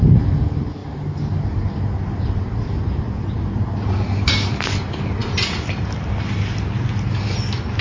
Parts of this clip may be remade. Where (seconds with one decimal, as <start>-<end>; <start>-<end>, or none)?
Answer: none